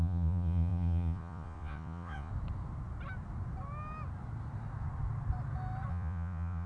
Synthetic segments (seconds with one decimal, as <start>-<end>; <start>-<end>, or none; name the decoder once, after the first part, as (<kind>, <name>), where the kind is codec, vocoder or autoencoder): 0.0-2.3 (vocoder, Vocos); 5.9-6.7